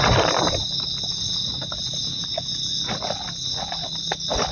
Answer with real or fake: real